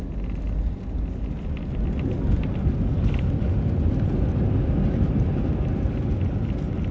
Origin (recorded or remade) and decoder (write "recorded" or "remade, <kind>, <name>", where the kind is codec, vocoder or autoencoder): recorded